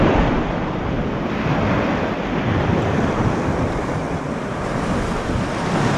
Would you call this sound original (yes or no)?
yes